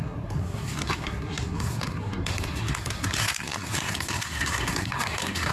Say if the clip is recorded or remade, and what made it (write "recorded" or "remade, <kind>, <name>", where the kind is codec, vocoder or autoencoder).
remade, codec, SNAC